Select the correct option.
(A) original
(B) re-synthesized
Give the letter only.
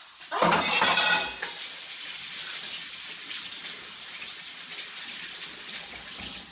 A